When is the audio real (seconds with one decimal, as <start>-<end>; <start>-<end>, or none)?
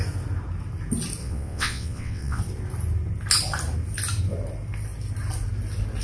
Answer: 0.0-1.2; 2.4-6.0